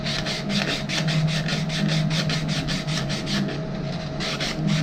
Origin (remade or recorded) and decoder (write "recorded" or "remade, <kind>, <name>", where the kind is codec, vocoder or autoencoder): recorded